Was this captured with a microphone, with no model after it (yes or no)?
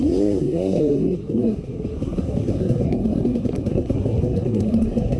no